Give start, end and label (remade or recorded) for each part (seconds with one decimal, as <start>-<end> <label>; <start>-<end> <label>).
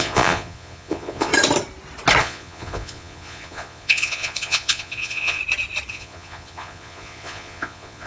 0.0-1.3 remade; 1.3-2.2 recorded; 2.2-5.4 remade; 5.4-5.9 recorded; 5.9-8.1 remade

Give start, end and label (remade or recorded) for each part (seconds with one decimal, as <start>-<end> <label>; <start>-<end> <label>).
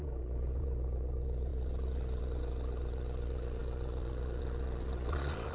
0.0-5.5 remade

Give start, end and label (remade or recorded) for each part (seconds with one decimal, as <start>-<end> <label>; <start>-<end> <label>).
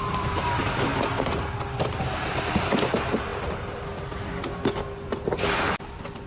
0.0-6.3 recorded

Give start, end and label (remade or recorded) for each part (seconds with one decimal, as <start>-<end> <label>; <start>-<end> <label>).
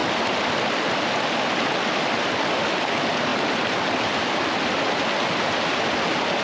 0.0-6.4 recorded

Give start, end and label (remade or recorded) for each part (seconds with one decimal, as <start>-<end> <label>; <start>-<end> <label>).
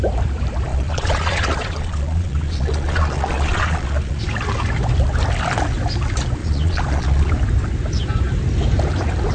0.0-0.7 recorded; 0.7-4.2 remade; 4.2-6.4 recorded; 6.4-7.3 remade; 7.3-9.3 recorded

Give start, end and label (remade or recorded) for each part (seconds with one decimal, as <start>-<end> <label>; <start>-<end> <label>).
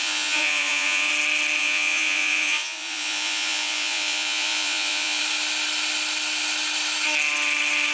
0.0-1.1 remade; 1.1-1.6 recorded; 1.6-5.2 remade; 5.2-7.9 recorded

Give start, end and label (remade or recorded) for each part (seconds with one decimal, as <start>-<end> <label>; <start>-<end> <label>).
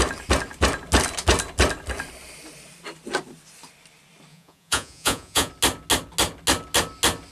0.0-4.3 recorded; 4.3-5.5 remade; 5.5-7.3 recorded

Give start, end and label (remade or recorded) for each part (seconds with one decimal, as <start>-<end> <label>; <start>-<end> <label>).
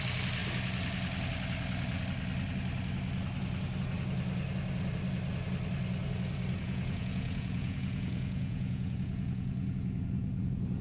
0.0-6.6 recorded; 6.6-10.8 remade